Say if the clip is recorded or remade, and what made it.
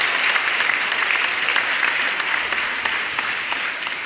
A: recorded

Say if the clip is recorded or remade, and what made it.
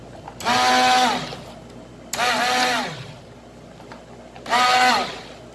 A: recorded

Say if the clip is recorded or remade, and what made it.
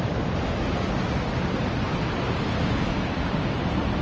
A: recorded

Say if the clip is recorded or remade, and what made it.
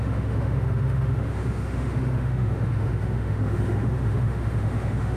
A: remade, autoencoder, DAC-VAE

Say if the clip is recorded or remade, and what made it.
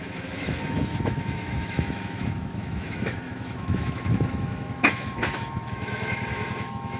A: remade, autoencoder, DAC-VAE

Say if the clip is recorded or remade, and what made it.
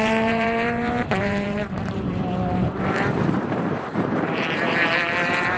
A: remade, vocoder, BigVGAN v2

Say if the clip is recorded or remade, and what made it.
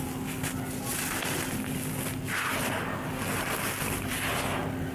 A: recorded